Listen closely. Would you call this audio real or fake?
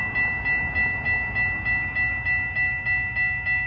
real